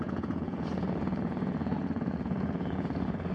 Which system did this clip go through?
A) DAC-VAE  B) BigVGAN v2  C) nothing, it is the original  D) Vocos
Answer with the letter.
D